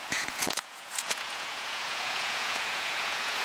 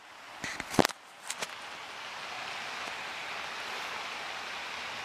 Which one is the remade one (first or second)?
first